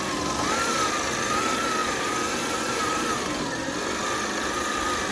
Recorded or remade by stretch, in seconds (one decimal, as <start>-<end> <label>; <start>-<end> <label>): 0.0-1.8 recorded; 1.8-3.4 remade; 3.4-5.1 recorded